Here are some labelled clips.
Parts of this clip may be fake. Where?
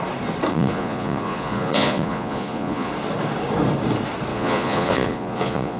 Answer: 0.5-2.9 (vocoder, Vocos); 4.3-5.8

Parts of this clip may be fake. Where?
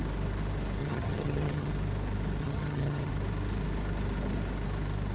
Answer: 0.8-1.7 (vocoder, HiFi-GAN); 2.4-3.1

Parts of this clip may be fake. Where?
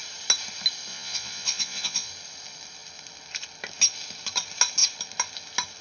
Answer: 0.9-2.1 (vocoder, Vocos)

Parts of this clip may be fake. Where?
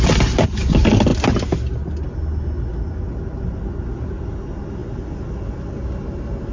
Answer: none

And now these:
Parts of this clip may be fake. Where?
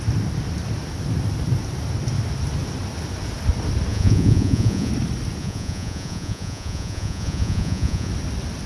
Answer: 3.9-4.9 (vocoder, Vocos); 5.4-8.1